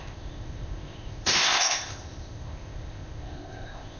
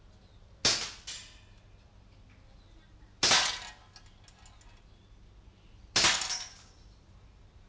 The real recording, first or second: second